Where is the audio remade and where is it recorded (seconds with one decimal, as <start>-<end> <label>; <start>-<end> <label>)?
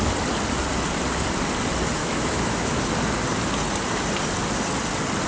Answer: 0.0-2.0 recorded; 2.0-2.8 remade; 2.8-5.3 recorded